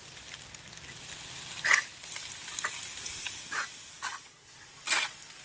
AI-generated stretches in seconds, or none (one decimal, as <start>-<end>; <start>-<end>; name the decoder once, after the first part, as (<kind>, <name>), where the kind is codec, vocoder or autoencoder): none